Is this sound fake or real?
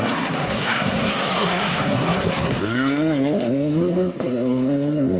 fake